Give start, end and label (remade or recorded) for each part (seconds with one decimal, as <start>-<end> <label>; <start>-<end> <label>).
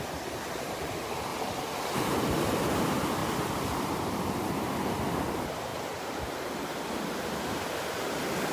0.0-1.3 remade; 1.3-2.0 recorded; 2.0-8.5 remade